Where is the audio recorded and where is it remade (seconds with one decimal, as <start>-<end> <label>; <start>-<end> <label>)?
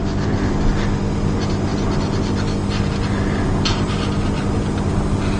0.0-5.4 recorded